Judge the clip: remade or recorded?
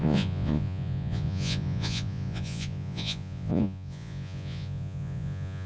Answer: remade